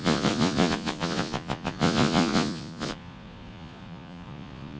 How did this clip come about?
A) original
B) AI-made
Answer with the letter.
B